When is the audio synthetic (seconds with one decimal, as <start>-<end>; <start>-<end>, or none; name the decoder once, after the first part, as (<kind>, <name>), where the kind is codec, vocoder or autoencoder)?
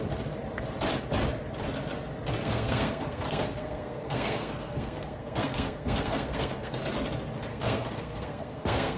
2.4-6.8 (codec, SNAC); 7.5-9.0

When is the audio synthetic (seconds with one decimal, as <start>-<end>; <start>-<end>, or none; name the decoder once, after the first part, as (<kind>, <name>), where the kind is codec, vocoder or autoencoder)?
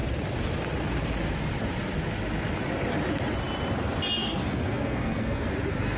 4.2-5.5 (codec, SNAC)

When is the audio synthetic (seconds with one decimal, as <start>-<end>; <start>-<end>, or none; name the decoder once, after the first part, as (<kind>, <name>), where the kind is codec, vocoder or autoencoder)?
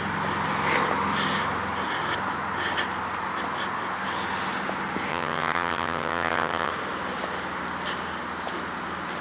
5.1-6.7 (vocoder, HiFi-GAN)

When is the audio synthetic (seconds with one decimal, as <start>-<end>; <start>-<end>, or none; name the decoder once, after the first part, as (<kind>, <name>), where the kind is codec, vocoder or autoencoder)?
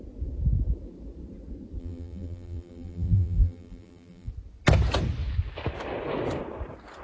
1.8-4.3 (vocoder, BigVGAN v2)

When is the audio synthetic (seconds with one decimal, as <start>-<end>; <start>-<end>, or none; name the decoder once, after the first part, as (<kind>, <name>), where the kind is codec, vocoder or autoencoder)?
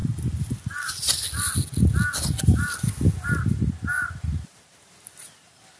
3.9-5.2 (vocoder, BigVGAN v2)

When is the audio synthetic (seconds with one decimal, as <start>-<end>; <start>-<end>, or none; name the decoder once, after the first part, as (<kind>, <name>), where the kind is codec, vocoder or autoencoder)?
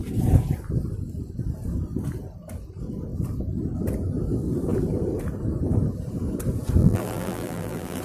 6.8-8.0 (vocoder, BigVGAN v2)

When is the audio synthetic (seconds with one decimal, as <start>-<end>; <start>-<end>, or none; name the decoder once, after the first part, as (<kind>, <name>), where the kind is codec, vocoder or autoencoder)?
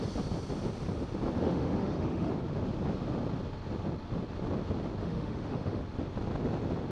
1.4-2.3 (autoencoder, DAC-VAE); 5.0-5.8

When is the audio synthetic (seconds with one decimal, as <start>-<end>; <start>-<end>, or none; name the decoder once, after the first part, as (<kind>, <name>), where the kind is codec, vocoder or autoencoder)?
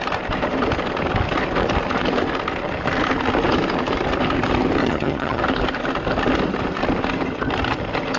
4.8-5.4 (vocoder, HiFi-GAN)